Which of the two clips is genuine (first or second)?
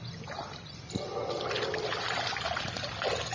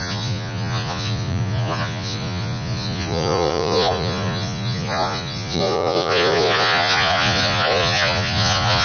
first